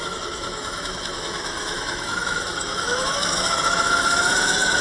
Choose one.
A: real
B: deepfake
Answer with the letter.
B